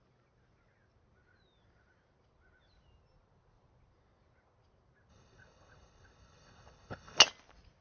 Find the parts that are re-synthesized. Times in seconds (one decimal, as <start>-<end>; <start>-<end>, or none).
5.1-7.2